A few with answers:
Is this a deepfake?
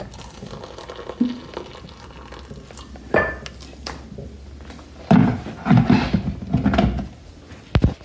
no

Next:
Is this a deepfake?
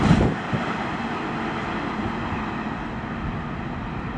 no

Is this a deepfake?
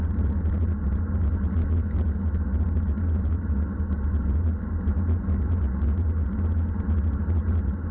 no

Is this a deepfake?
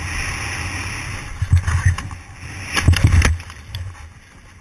no